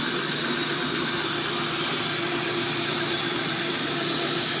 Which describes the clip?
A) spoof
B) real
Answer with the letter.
B